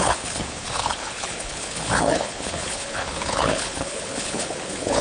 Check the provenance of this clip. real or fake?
fake